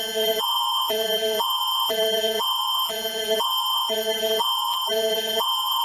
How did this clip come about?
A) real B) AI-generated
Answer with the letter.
B